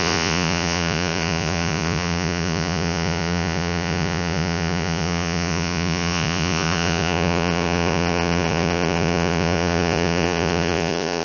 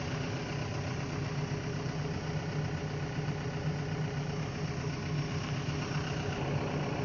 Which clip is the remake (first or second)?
first